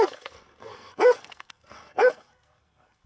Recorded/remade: remade